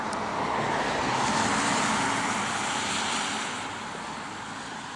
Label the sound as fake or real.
real